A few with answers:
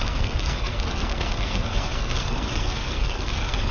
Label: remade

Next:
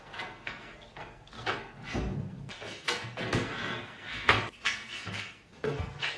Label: remade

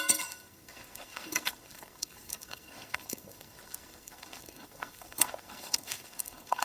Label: remade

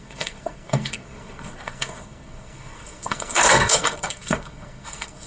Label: remade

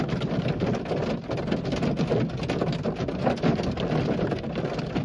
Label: recorded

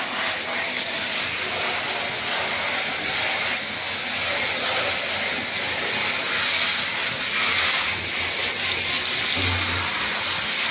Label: recorded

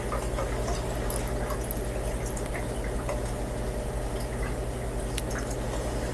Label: recorded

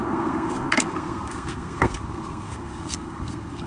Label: remade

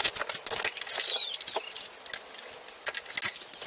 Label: recorded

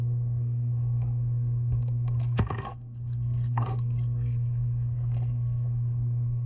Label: remade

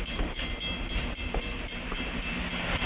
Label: recorded